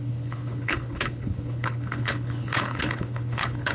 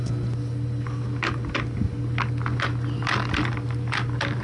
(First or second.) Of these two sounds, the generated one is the first